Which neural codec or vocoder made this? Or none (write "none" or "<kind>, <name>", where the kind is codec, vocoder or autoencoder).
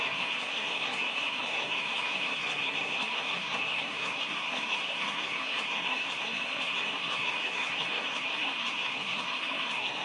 codec, SNAC